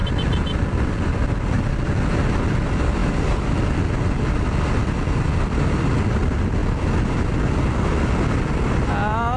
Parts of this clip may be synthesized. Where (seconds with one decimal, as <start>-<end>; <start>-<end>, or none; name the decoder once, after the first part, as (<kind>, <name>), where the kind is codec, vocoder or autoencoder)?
none